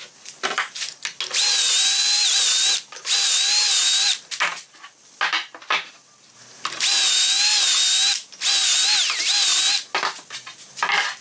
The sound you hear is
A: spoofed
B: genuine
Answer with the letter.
B